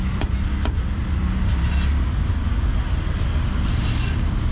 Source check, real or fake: real